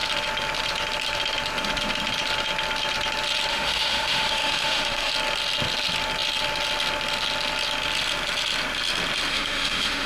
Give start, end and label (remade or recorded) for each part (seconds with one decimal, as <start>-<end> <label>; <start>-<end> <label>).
0.0-3.5 recorded; 3.5-5.1 remade; 5.1-9.3 recorded; 9.3-10.1 remade